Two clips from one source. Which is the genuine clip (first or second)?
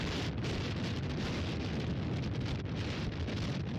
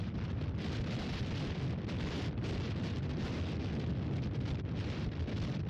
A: first